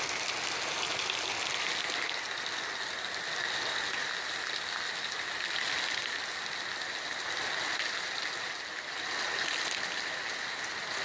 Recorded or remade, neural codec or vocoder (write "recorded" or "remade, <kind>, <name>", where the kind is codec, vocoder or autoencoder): recorded